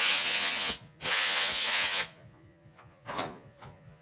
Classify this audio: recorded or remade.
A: remade